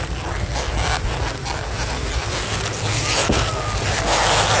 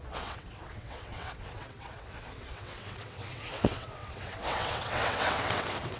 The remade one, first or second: second